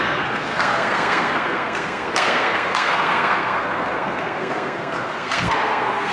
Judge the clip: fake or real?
fake